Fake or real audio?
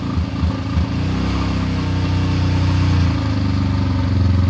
real